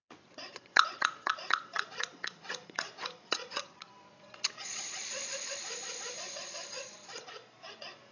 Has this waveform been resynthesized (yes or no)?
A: yes